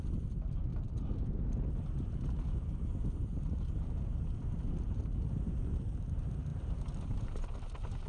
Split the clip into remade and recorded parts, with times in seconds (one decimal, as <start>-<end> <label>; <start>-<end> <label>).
0.0-8.1 recorded